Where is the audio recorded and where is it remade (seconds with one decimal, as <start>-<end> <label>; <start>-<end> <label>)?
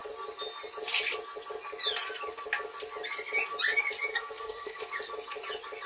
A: 0.0-4.1 recorded; 4.1-4.8 remade; 4.8-5.9 recorded